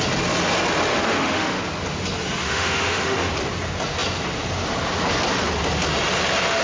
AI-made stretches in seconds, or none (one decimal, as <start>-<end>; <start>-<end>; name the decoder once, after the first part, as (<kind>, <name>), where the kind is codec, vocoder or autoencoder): 0.9-1.6 (autoencoder, DAC-VAE); 2.4-3.3